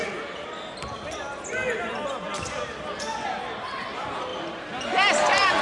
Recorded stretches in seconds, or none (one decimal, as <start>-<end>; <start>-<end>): 0.0-5.6